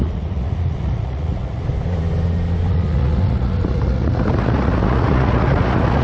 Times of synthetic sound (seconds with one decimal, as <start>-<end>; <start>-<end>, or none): 0.0-1.6; 2.7-6.0